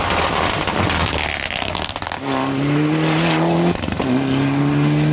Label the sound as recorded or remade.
recorded